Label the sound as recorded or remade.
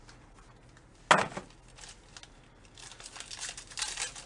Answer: recorded